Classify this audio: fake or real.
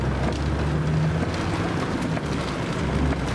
real